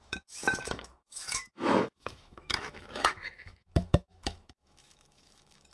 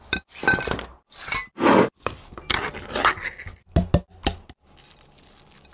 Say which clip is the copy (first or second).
first